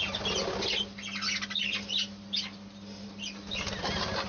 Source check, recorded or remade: recorded